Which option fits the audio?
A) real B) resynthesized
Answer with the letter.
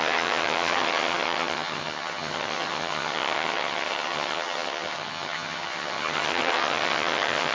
B